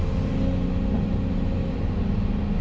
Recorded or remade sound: recorded